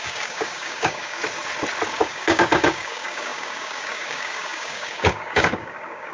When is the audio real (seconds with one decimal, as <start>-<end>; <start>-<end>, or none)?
1.2-2.0